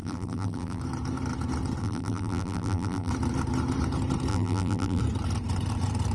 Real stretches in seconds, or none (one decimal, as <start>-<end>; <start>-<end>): 0.8-1.8; 3.1-4.3; 5.0-6.1